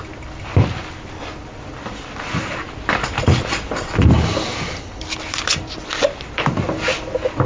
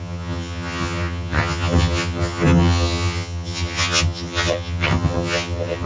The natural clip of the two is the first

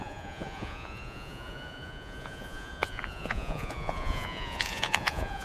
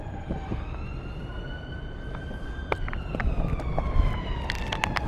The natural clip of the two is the second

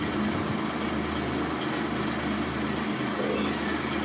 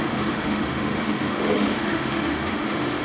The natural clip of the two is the first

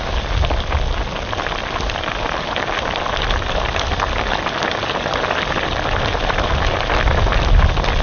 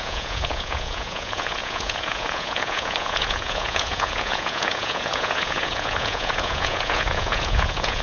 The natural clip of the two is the first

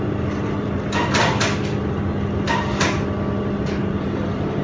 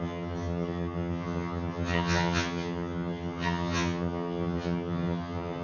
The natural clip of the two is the first